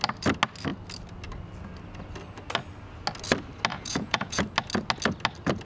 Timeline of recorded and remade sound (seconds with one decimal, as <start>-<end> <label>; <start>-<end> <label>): 0.0-3.7 recorded; 3.7-4.4 remade; 4.4-5.7 recorded

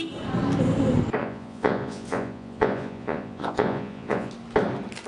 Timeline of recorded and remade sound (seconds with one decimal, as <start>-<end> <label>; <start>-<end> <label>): 0.0-1.2 recorded; 1.2-4.3 remade; 4.3-5.1 recorded

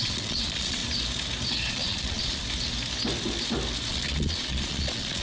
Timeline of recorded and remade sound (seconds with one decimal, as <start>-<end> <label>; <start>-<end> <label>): 0.0-0.8 remade; 0.8-1.7 recorded; 1.7-2.4 remade; 2.4-3.9 recorded; 3.9-5.2 remade

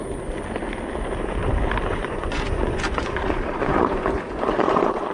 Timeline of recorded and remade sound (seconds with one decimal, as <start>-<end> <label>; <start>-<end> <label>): 0.0-1.9 recorded; 1.9-5.1 remade

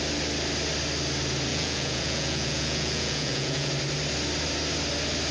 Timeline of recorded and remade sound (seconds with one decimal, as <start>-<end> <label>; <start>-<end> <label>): 0.0-1.5 recorded; 1.5-3.7 remade; 3.7-5.3 recorded